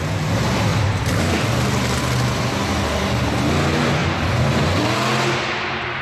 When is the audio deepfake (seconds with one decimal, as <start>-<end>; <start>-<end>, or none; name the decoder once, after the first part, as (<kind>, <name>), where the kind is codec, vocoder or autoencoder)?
0.7-2.0 (vocoder, BigVGAN v2); 4.0-5.1

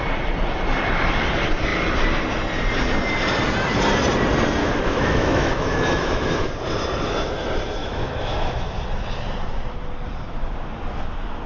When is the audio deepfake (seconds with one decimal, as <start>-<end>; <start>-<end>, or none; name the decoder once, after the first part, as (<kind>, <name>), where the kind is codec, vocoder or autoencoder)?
4.6-6.5 (autoencoder, DAC-VAE); 7.8-8.7

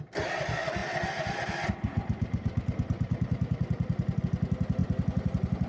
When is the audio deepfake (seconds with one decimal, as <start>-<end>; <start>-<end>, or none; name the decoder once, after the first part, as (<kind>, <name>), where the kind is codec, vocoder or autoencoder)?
none

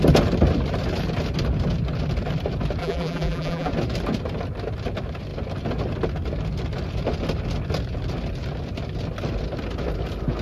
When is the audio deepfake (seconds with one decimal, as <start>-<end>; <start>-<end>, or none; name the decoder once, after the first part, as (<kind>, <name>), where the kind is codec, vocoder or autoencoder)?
2.8-3.7 (vocoder, BigVGAN v2)

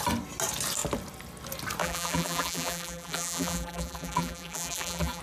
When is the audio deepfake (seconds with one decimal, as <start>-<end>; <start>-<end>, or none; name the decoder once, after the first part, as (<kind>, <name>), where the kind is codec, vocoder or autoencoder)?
1.8-5.2 (vocoder, BigVGAN v2)

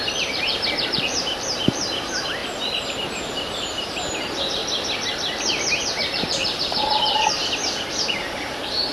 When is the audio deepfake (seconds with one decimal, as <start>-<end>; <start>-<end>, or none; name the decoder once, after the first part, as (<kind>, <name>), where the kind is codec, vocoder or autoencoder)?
0.0-2.4 (vocoder, BigVGAN v2); 3.1-4.6; 5.8-7.4; 8.1-8.9